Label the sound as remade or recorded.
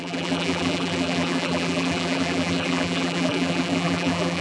remade